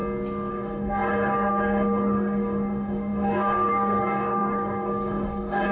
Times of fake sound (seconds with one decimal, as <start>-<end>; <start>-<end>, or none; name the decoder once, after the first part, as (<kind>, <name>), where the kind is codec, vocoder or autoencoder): 0.5-5.7 (codec, DAC)